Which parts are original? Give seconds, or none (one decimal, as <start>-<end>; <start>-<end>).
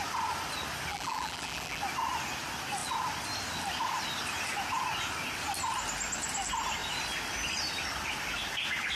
0.0-0.9; 1.8-8.9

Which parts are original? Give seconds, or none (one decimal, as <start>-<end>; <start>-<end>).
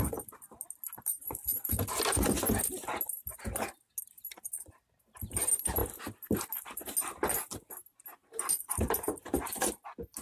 0.0-10.2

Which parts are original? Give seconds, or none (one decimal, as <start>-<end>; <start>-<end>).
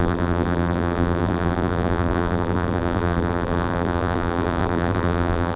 none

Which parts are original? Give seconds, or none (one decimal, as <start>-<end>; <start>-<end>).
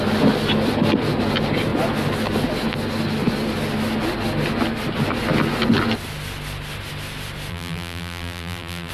0.0-7.5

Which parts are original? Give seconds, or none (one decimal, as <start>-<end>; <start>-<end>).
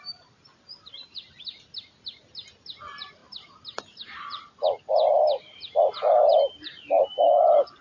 0.0-3.2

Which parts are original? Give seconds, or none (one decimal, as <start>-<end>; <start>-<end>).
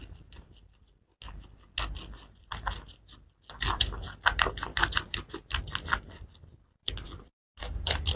0.0-4.7; 5.3-8.2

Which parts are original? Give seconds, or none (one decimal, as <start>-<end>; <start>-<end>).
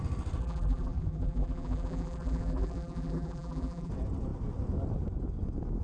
0.0-0.4; 3.9-5.8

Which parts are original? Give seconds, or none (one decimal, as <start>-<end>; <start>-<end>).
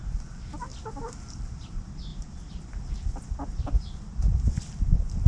0.7-1.3; 2.1-5.3